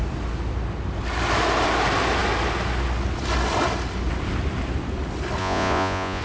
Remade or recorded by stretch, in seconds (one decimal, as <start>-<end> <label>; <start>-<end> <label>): 0.0-5.4 recorded; 5.4-6.2 remade